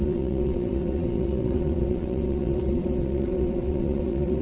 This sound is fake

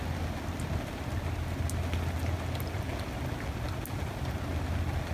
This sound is real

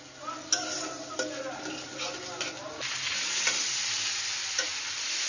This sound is real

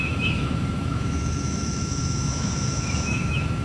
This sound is fake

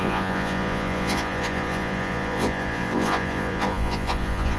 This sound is fake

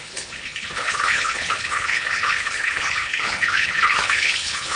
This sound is fake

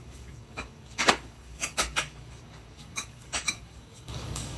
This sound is fake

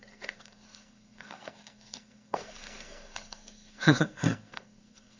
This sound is fake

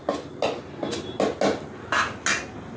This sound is real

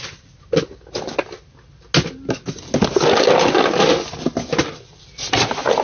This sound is real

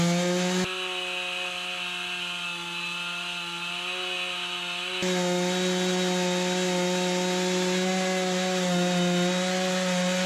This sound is real